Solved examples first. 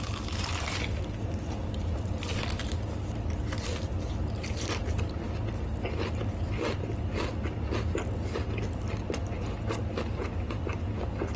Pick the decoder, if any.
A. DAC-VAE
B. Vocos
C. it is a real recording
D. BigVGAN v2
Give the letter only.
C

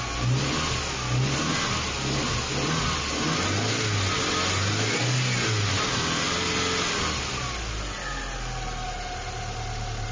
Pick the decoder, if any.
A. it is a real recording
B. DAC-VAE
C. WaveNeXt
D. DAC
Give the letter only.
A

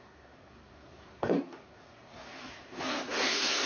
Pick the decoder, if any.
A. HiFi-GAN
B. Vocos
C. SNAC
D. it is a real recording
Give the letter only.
C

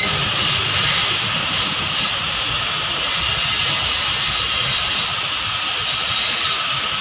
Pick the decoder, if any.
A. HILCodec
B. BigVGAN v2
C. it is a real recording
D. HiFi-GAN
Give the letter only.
C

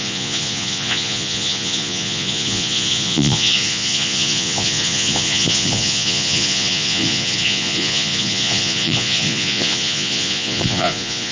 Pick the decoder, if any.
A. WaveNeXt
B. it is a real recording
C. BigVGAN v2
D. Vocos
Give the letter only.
D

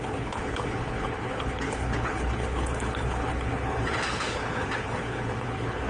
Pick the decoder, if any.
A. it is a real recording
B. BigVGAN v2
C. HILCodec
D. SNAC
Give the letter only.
C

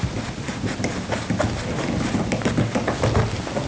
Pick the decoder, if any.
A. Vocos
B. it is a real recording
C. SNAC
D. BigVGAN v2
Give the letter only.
B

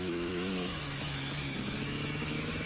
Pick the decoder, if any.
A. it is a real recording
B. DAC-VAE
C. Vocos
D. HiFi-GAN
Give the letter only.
B